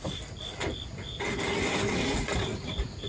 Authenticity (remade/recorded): recorded